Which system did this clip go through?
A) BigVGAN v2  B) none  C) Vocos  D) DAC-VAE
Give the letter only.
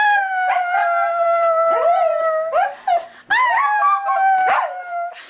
A